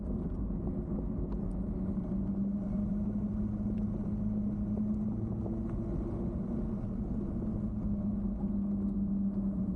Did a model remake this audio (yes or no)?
no